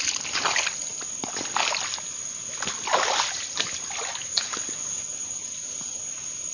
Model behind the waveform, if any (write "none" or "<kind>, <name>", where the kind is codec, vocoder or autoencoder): none